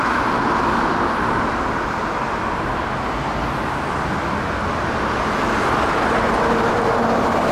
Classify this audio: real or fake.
real